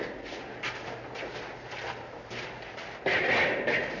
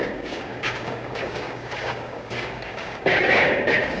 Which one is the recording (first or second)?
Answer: first